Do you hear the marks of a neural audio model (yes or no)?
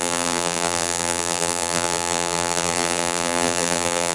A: yes